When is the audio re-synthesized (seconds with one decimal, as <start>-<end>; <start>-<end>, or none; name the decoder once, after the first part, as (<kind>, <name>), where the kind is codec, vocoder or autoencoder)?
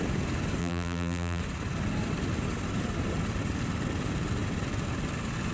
0.6-1.4 (vocoder, BigVGAN v2)